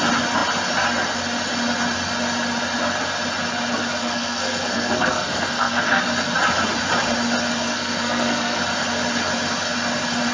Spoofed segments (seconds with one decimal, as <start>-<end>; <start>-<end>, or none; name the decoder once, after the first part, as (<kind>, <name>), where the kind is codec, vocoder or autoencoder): 4.0-6.0 (codec, SNAC); 7.7-8.6